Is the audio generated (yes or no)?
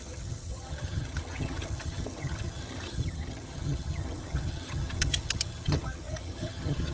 yes